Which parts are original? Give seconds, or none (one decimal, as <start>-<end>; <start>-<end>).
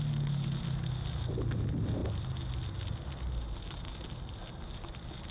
0.0-5.3